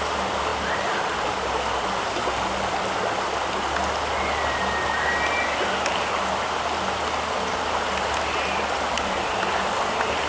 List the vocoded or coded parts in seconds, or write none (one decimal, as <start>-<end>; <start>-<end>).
none